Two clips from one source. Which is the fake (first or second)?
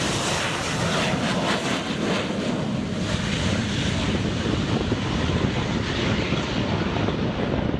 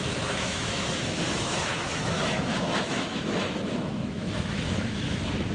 second